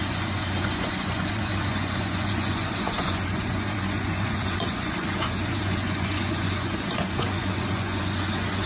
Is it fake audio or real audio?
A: fake